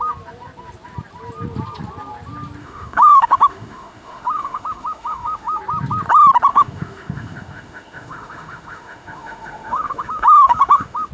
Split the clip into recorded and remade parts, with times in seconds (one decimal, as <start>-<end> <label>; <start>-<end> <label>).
0.0-2.6 recorded; 2.6-5.6 remade; 5.6-6.5 recorded; 6.5-11.1 remade